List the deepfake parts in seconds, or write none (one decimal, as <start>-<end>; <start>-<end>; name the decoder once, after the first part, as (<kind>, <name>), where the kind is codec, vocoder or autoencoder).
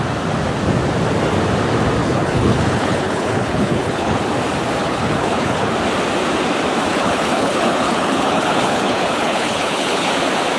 2.0-4.2 (codec, HILCodec); 4.8-5.7; 6.9-10.1